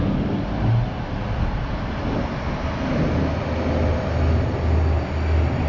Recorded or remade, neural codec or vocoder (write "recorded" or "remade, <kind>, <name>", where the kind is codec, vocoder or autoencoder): recorded